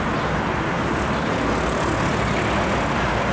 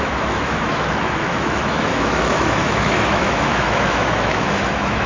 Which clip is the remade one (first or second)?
second